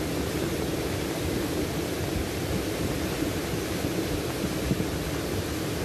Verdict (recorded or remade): recorded